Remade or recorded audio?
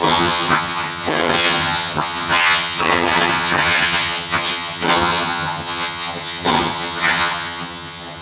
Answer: remade